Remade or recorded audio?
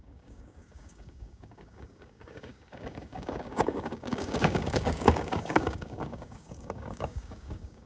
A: remade